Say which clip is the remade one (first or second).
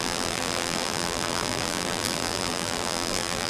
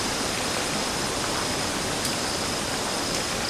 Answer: first